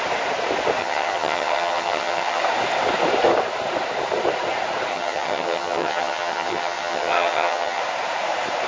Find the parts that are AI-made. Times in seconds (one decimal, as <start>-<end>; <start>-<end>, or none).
0.8-2.4; 4.9-7.8